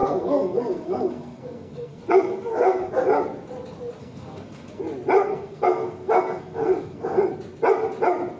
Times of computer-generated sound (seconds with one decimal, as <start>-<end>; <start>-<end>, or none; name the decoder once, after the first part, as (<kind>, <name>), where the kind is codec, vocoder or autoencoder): 0.0-2.9 (codec, SNAC); 4.0-4.8; 5.2-7.2